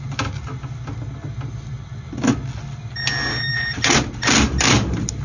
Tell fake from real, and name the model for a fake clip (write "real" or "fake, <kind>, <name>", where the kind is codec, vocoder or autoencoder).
real